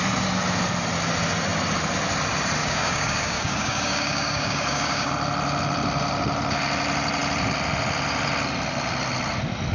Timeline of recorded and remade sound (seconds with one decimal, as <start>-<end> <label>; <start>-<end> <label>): 0.0-2.6 recorded; 2.6-5.1 remade; 5.1-9.7 recorded

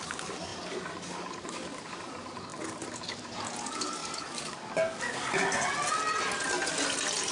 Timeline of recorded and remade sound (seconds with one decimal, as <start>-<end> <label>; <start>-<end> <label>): 0.0-5.4 remade; 5.4-7.3 recorded